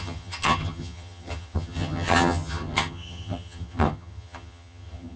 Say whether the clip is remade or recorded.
remade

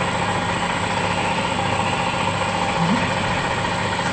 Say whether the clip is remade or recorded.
recorded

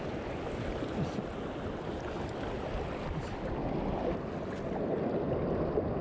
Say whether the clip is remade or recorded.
recorded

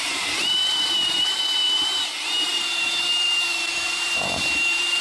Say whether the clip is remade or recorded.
remade